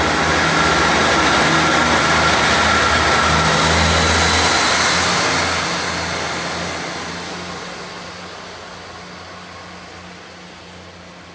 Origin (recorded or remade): recorded